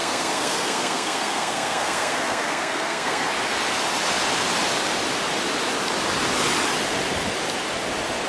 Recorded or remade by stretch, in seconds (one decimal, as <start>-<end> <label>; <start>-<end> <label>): 0.0-3.3 remade; 3.3-8.3 recorded